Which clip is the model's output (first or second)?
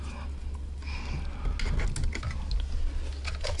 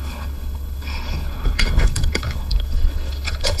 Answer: second